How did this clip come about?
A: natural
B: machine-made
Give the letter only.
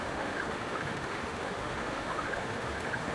B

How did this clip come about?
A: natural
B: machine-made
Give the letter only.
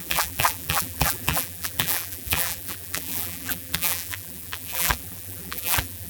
B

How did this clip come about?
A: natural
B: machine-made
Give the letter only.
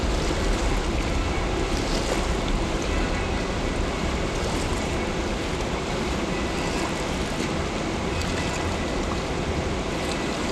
B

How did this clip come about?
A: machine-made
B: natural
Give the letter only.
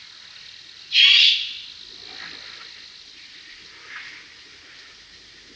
B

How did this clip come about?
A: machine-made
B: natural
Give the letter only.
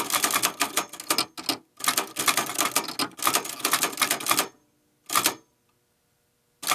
B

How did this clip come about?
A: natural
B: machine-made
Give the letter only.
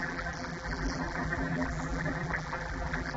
B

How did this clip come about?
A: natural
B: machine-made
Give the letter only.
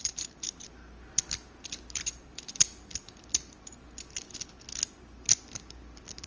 A